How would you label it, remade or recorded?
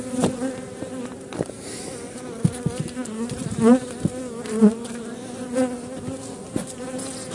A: recorded